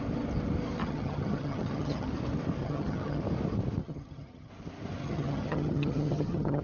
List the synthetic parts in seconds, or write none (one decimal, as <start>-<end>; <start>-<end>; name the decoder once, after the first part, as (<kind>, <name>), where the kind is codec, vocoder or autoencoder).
0.8-2.1 (vocoder, HiFi-GAN); 2.6-3.2; 3.8-4.5; 5.0-6.6